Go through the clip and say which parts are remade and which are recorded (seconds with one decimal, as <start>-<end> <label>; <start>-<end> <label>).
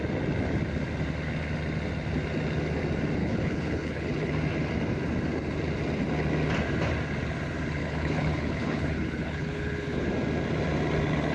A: 0.0-3.2 recorded; 3.2-4.3 remade; 4.3-7.8 recorded; 7.8-10.1 remade; 10.1-11.3 recorded